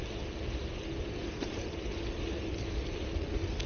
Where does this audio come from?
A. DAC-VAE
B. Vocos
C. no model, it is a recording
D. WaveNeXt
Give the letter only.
C